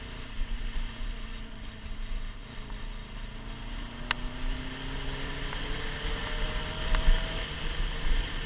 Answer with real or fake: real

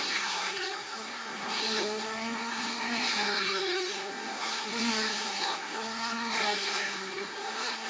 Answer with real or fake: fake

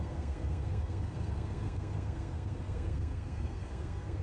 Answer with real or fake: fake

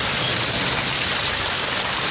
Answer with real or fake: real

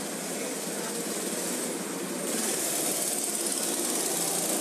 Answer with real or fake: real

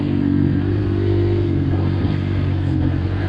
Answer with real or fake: fake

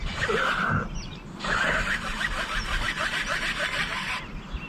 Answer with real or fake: real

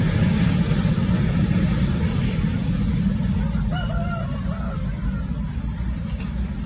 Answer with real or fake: real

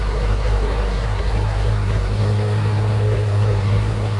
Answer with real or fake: fake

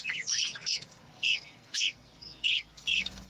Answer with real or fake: fake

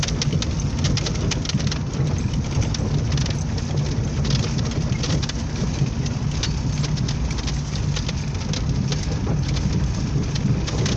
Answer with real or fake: real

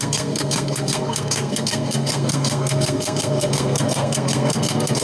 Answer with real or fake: fake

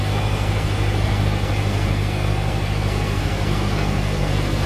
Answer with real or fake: fake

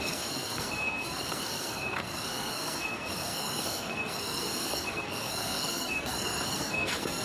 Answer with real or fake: fake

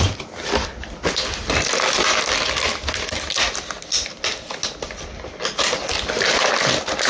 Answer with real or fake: real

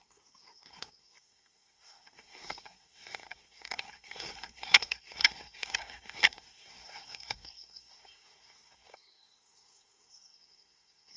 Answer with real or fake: fake